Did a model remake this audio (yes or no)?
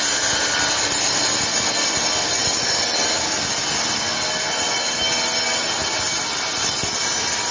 no